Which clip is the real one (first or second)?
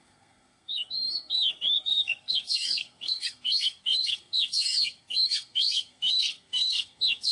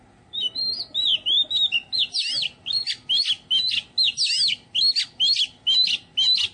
second